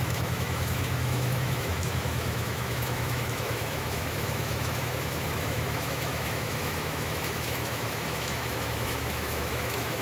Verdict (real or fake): fake